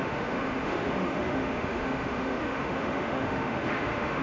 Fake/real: fake